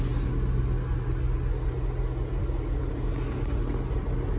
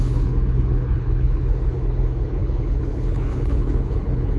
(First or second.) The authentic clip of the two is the first